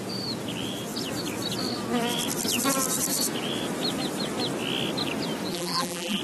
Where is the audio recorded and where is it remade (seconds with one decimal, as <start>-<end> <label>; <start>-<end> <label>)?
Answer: 0.0-5.5 recorded; 5.5-6.2 remade